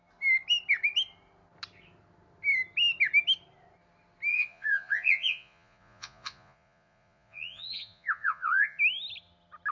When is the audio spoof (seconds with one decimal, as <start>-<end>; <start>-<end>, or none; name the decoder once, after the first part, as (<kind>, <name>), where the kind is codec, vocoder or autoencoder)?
4.3-8.8 (vocoder, Vocos)